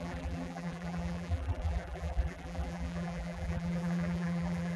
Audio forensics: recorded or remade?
remade